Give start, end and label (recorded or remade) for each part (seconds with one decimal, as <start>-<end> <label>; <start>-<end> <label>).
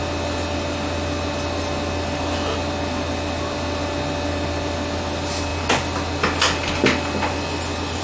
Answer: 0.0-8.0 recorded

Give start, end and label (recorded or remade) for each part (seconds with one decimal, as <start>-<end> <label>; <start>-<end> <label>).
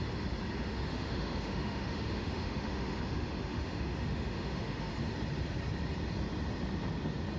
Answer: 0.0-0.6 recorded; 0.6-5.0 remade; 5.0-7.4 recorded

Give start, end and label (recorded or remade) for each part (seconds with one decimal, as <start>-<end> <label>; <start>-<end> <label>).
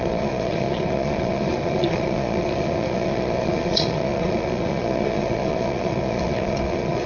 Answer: 0.0-7.1 remade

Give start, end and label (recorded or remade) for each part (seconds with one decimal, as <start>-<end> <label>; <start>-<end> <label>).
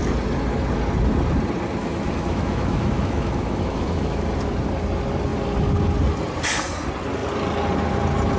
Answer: 0.0-1.8 recorded; 1.8-4.3 remade; 4.3-8.4 recorded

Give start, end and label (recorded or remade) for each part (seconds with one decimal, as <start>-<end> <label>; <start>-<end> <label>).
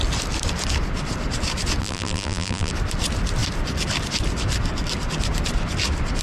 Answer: 0.0-1.8 recorded; 1.8-2.7 remade; 2.7-6.2 recorded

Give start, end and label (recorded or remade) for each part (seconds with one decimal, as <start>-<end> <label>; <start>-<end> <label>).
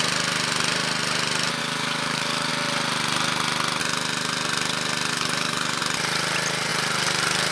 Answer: 0.0-1.6 recorded; 1.6-2.5 remade; 2.5-5.1 recorded; 5.1-5.8 remade; 5.8-7.5 recorded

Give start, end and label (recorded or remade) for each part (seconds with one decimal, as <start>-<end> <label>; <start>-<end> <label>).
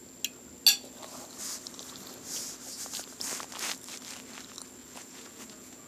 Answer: 0.0-4.8 recorded; 4.8-5.9 remade